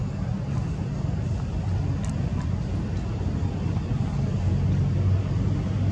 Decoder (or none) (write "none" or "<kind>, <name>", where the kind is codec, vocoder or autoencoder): none